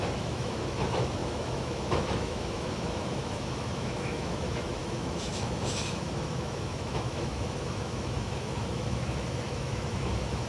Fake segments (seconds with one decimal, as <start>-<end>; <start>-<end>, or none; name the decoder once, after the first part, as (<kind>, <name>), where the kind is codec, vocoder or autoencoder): 0.0-10.5 (autoencoder, DAC-VAE)